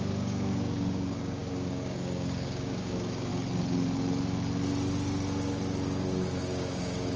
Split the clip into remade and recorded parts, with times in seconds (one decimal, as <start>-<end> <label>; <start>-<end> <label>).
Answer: 0.0-3.3 remade; 3.3-6.4 recorded; 6.4-7.2 remade